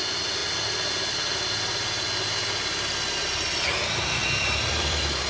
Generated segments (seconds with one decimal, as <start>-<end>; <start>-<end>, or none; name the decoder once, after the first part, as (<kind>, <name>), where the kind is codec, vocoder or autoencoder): 4.2-5.3 (vocoder, BigVGAN v2)